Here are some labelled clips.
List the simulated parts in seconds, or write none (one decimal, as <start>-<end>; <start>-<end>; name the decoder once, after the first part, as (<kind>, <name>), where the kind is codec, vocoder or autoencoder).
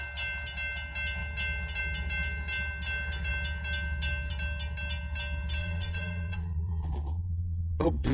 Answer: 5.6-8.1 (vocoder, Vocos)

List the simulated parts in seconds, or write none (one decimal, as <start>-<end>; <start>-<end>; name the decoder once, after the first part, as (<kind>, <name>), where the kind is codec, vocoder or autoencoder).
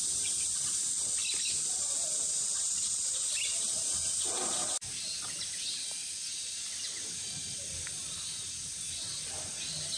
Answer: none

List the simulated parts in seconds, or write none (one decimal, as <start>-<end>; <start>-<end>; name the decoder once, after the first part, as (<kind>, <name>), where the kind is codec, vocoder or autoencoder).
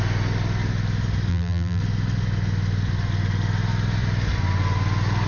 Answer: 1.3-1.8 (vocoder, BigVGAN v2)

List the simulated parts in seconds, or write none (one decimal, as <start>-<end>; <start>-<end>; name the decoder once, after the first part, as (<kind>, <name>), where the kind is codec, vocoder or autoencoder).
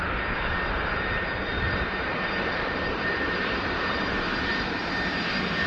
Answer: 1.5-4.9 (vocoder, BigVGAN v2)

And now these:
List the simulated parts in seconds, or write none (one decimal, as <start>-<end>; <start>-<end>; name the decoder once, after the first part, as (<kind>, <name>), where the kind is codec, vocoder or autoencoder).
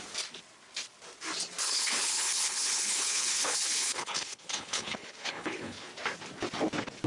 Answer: 1.6-5.9 (codec, HILCodec)